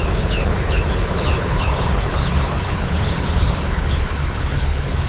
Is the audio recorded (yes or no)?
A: no